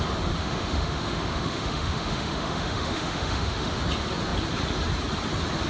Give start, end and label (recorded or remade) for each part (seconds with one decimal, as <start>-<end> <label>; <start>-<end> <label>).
0.0-0.4 recorded; 0.4-3.8 remade; 3.8-5.7 recorded